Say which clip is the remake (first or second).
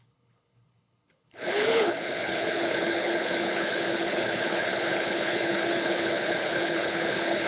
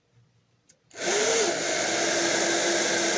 first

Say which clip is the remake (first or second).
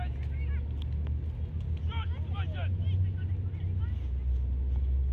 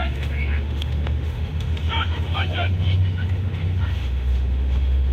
second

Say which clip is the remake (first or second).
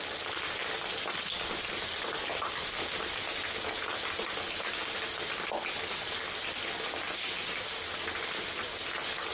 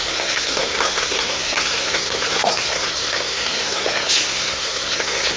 second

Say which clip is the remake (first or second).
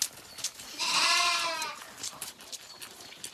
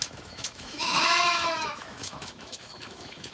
second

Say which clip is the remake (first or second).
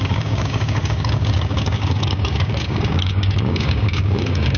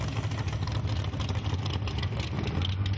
first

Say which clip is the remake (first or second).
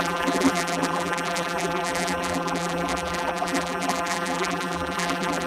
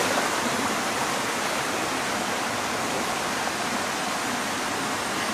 first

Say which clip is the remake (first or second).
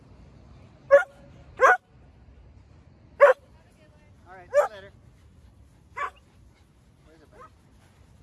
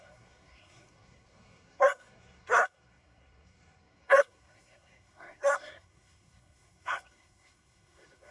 second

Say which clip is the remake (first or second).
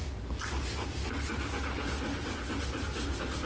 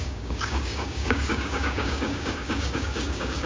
second